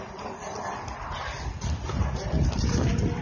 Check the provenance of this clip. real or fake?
real